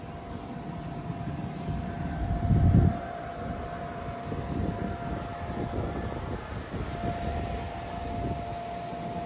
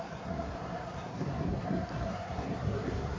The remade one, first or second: second